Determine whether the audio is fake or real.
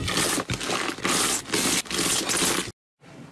real